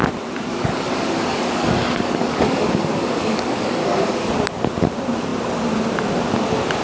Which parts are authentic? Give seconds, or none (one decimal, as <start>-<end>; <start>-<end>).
0.0-0.5; 4.3-6.8